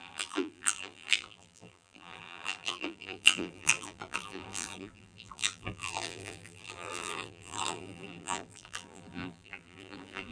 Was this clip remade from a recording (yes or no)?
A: yes